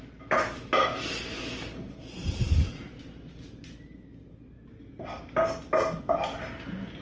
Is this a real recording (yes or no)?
yes